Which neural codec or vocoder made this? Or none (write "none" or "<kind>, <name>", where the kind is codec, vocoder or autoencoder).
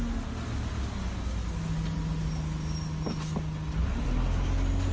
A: none